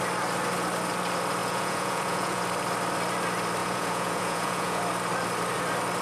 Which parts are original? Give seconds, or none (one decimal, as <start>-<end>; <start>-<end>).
0.0-1.4; 2.4-3.6; 4.8-6.0